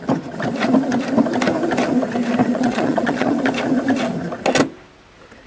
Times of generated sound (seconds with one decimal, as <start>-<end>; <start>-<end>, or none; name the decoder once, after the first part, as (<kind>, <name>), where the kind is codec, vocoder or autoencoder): 2.4-3.4 (vocoder, Vocos)

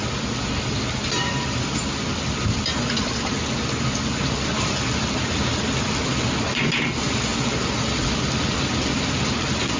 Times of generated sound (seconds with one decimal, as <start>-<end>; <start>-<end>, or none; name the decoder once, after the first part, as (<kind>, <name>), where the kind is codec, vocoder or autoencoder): none

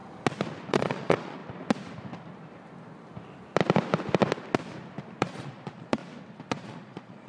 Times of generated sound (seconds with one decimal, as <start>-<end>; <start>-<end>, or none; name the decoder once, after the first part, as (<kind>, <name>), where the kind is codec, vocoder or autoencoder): 0.7-1.4 (vocoder, Vocos); 5.2-6.0; 6.5-7.3

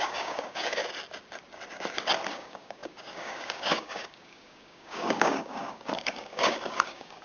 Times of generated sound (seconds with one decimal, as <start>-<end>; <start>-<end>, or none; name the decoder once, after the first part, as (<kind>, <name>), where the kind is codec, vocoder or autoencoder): 0.0-0.8 (codec, DAC); 2.3-7.2

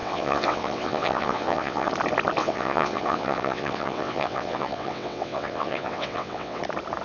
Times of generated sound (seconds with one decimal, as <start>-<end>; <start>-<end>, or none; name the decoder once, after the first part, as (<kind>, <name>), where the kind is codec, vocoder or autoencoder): 0.0-1.9 (vocoder, WaveNeXt); 2.4-6.6

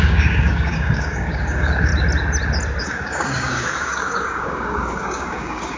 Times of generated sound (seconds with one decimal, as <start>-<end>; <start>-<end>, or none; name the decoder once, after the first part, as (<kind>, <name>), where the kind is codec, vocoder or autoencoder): 0.0-1.9 (codec, DAC); 2.8-5.8

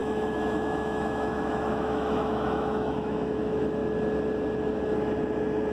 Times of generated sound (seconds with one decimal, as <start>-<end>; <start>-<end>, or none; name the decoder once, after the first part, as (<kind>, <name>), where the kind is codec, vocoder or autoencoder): 0.0-3.8 (autoencoder, DAC-VAE)

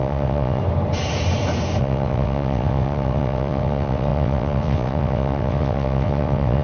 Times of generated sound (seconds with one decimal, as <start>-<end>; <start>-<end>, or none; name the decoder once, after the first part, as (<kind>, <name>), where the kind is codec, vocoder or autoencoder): 0.0-0.6 (vocoder, WaveNeXt); 1.8-6.6